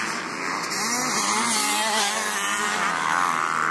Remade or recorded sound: recorded